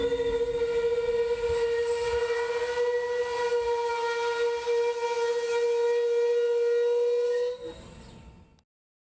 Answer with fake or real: real